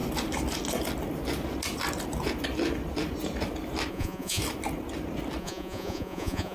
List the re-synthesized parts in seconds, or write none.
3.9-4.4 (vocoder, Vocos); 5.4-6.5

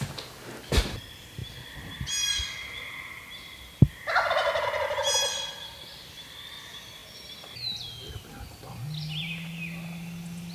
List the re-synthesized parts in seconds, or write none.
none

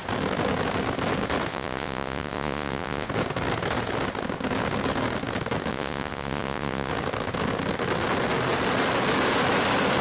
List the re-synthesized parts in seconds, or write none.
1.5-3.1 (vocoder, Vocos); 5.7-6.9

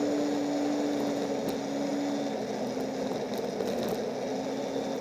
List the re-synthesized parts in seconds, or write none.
none

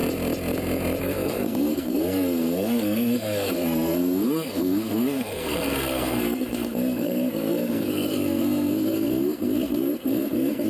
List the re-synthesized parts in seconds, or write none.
1.0-10.7 (codec, SNAC)

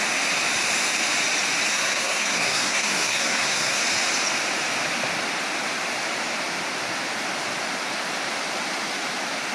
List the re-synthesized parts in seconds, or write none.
1.7-3.8 (codec, SNAC)

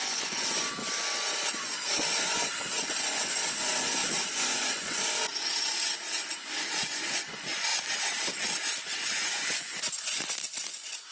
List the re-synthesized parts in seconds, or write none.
0.0-7.7 (vocoder, Vocos); 8.8-11.1

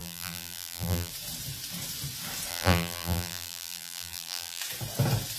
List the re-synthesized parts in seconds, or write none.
0.0-1.1 (vocoder, BigVGAN v2); 2.5-4.6